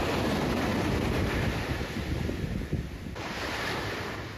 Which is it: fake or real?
real